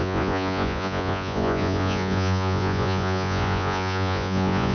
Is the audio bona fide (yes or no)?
no